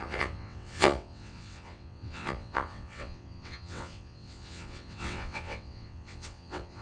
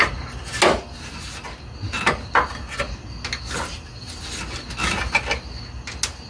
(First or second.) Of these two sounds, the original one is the second